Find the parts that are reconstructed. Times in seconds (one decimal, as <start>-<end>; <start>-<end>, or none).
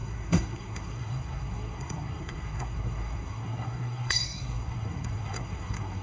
0.0-6.0